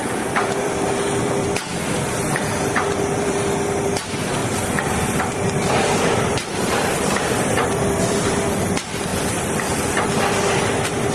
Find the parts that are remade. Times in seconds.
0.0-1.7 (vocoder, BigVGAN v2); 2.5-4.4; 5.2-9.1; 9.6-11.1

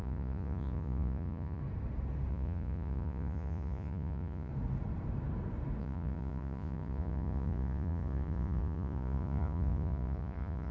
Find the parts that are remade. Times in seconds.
0.0-1.6 (vocoder, Vocos); 2.3-4.5; 5.8-10.7

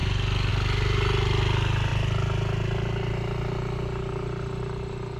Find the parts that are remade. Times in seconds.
none

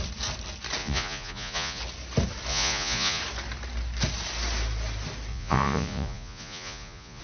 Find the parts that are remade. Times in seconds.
0.8-1.8 (vocoder, Vocos); 2.5-3.2; 5.3-7.2

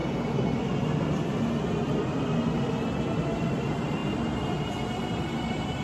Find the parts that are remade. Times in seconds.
none

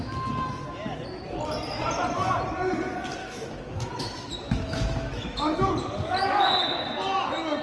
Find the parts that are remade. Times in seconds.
3.2-5.7 (autoencoder, DAC-VAE)

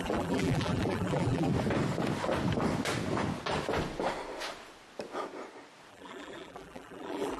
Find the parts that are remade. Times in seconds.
0.0-1.5 (vocoder, BigVGAN v2); 5.9-7.4